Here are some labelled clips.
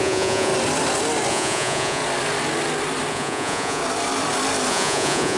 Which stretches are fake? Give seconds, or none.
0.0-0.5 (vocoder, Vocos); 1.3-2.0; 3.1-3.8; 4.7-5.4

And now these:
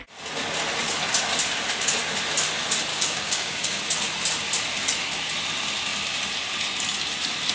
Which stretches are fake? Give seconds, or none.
2.9-3.8 (codec, DAC)

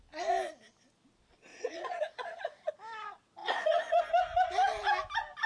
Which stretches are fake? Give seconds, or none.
1.5-2.7 (vocoder, Vocos); 3.4-4.0

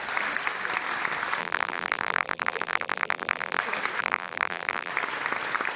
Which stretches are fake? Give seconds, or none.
1.4-3.6 (vocoder, BigVGAN v2); 4.0-4.9

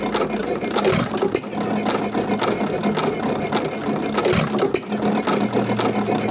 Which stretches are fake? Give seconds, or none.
0.4-1.0 (vocoder, BigVGAN v2)

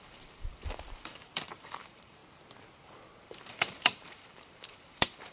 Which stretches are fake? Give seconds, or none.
0.0-2.2 (vocoder, BigVGAN v2); 3.2-5.3

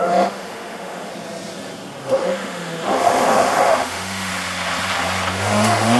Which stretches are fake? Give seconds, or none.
0.0-1.1 (autoencoder, DAC-VAE); 2.0-4.3; 5.3-6.0

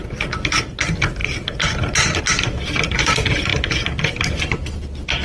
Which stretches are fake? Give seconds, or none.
none